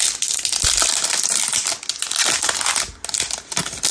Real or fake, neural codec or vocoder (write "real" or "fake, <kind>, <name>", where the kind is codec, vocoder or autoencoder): real